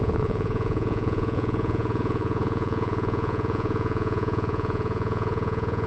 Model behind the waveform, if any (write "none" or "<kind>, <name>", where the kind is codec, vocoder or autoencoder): vocoder, Vocos